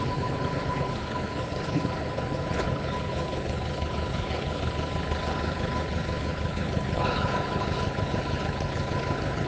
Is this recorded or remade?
remade